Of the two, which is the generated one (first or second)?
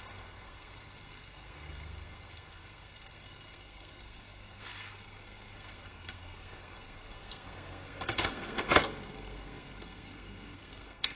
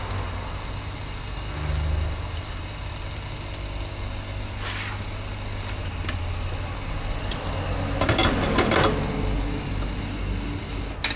first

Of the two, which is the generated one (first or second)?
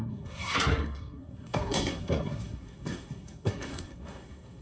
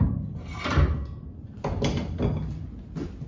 first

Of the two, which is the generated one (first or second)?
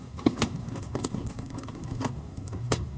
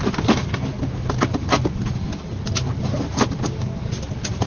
first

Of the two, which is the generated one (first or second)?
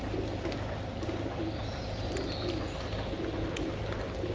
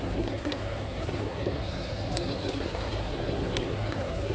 second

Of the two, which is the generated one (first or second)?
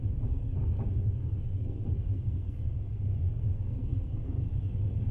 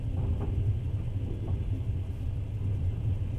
first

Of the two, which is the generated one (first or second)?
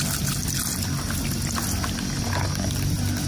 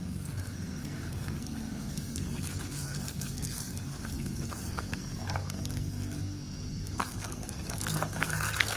second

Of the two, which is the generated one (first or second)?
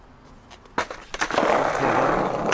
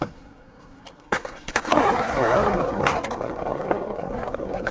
second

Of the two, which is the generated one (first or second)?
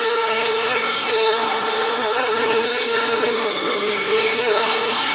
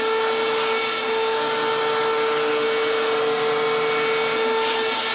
first